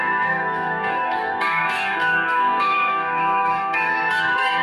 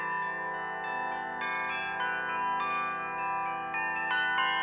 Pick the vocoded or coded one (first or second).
first